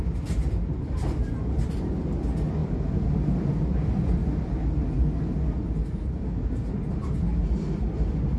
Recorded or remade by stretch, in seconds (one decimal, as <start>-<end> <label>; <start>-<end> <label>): 0.0-8.4 recorded